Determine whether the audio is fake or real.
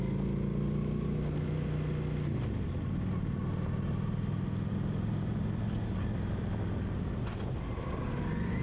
real